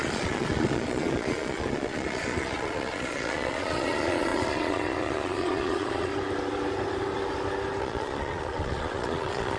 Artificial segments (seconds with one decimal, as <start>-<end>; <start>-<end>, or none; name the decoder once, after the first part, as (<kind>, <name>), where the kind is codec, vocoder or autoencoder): 0.0-6.1 (vocoder, Vocos); 7.8-9.6